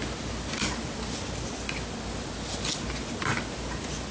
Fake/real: real